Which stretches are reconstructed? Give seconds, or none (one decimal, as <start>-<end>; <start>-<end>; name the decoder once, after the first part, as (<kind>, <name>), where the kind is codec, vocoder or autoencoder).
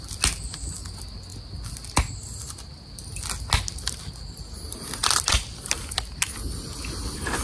none